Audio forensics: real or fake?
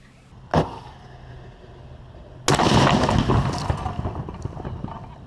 real